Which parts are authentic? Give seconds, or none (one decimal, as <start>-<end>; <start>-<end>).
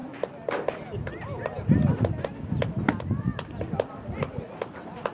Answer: 0.0-5.1